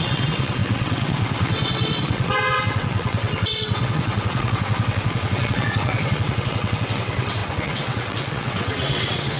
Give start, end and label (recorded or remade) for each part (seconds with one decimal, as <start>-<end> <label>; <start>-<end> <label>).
0.0-9.4 remade